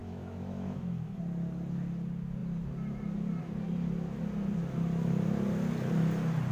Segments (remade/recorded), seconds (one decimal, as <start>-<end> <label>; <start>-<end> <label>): 0.0-1.2 remade; 1.2-6.5 recorded